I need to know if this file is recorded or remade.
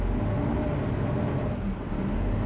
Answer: recorded